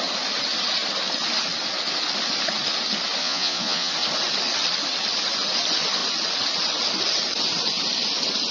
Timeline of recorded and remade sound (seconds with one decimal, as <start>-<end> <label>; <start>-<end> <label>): 0.0-3.2 recorded; 3.2-3.9 remade; 3.9-8.5 recorded

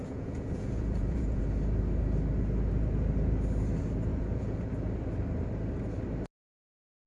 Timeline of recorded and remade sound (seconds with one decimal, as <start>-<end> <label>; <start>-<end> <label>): 0.0-1.4 remade; 1.4-4.1 recorded; 4.1-4.7 remade; 4.7-7.1 recorded

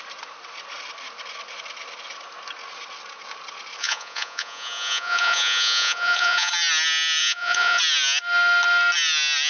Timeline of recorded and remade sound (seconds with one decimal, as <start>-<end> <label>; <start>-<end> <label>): 0.0-3.8 recorded; 3.8-6.5 remade; 6.5-7.2 recorded; 7.2-7.8 remade; 7.8-9.5 recorded

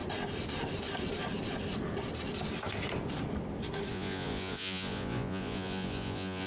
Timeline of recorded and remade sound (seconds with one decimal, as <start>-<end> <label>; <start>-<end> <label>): 0.0-3.9 recorded; 3.9-6.5 remade

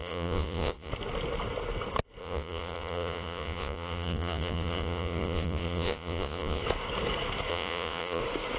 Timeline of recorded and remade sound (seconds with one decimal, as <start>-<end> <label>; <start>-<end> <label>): 0.0-0.9 remade; 0.9-2.2 recorded; 2.2-6.6 remade; 6.6-7.5 recorded; 7.5-8.2 remade; 8.2-8.6 recorded